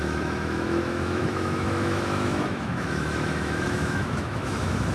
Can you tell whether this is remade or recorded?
remade